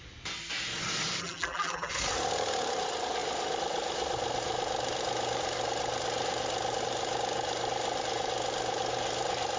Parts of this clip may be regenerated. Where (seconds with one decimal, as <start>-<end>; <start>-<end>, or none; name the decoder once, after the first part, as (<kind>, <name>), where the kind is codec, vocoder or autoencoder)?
1.2-1.9 (vocoder, BigVGAN v2)